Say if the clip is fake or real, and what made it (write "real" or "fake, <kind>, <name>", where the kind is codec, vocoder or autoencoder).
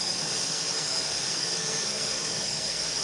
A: fake, codec, SNAC